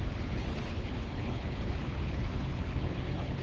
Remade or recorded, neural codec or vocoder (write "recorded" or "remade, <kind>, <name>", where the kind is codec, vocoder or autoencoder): remade, codec, HILCodec